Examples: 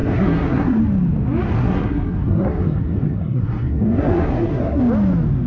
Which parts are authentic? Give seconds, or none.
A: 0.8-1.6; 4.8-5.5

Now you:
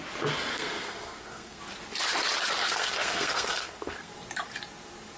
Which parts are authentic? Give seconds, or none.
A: 0.0-0.5; 1.6-2.6; 4.1-5.2

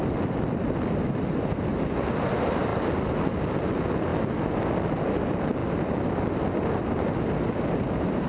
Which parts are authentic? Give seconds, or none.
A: 0.0-8.3

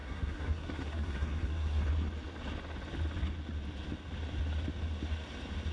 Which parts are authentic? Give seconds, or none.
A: 1.8-5.7

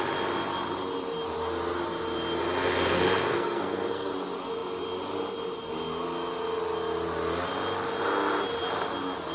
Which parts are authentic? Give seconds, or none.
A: 0.0-3.3; 4.1-9.3